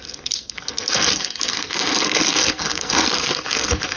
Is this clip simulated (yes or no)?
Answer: yes